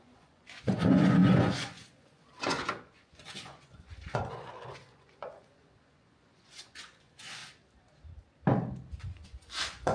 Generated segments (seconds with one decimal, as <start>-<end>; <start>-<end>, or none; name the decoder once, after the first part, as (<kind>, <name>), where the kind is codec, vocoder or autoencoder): 0.0-7.4 (vocoder, Vocos); 9.0-9.9